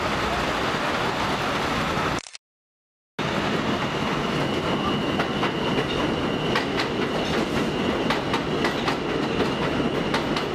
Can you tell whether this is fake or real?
real